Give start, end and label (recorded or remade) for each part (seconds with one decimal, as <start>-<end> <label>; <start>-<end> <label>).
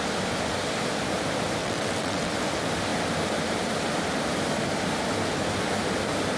0.0-1.6 recorded; 1.6-2.3 remade; 2.3-6.4 recorded